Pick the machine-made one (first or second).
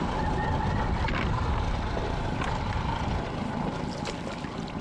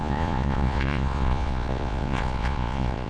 second